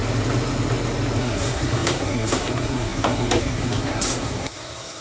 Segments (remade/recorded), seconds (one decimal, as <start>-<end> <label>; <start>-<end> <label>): 0.0-1.2 recorded; 1.2-5.0 remade

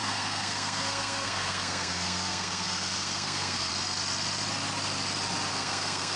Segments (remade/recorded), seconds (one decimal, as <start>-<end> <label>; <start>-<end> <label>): 0.0-3.7 remade; 3.7-5.5 recorded; 5.5-6.2 remade

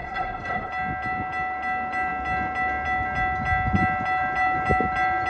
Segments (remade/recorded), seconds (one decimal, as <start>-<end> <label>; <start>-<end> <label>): 0.0-0.7 remade; 0.7-5.3 recorded

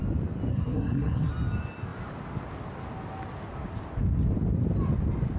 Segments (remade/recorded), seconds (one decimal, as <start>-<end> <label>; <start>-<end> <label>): 0.0-0.5 recorded; 0.5-1.3 remade; 1.3-5.4 recorded

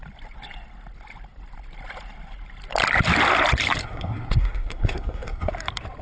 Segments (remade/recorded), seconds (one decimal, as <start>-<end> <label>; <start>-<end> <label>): 0.0-3.8 recorded; 3.8-5.5 remade; 5.5-6.0 recorded

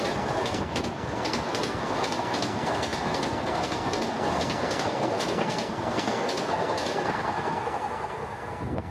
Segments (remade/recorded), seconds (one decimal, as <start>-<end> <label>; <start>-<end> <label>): 0.0-8.9 remade

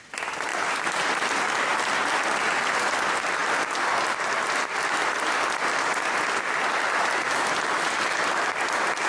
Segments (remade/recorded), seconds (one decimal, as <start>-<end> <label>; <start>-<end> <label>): 0.0-9.1 recorded